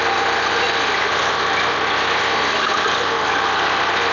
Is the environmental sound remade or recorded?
recorded